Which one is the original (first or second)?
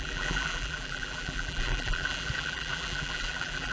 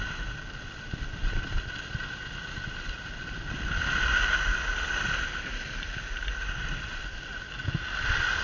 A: second